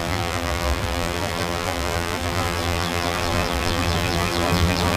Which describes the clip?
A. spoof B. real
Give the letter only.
A